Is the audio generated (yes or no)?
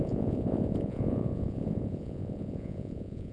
yes